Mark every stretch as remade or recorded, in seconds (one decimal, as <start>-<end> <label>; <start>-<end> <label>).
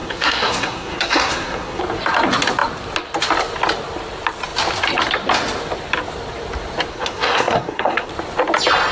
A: 0.0-1.8 remade; 1.8-6.9 recorded; 6.9-8.1 remade; 8.1-8.9 recorded